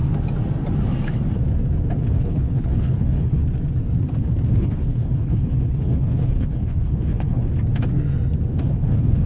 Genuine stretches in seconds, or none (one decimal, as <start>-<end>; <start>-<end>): 0.0-2.1; 3.4-4.5; 7.5-8.6